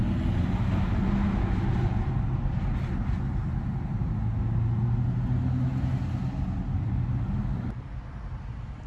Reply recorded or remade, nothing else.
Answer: recorded